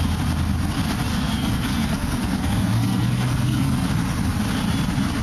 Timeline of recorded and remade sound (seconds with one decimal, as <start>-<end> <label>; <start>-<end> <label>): 0.0-1.1 recorded; 1.1-3.9 remade; 3.9-5.2 recorded